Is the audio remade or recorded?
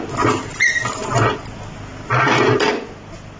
recorded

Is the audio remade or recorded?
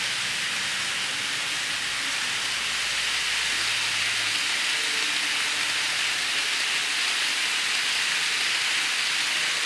recorded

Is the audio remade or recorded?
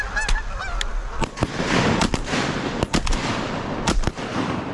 recorded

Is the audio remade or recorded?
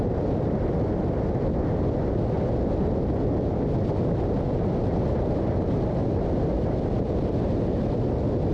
recorded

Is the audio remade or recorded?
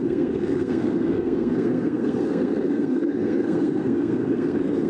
remade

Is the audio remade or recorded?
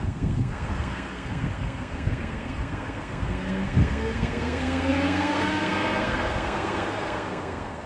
remade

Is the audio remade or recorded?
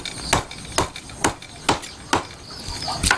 recorded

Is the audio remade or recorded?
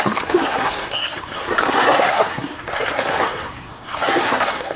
remade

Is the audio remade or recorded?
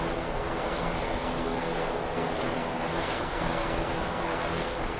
remade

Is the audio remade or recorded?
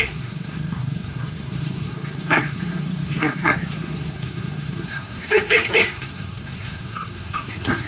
remade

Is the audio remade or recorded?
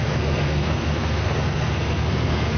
remade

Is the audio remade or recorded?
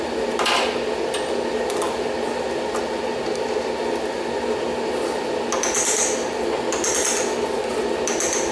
recorded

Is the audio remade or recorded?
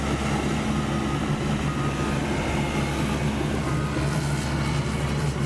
recorded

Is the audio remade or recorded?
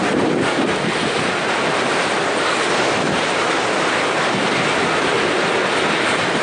recorded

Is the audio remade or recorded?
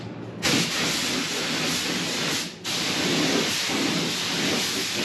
recorded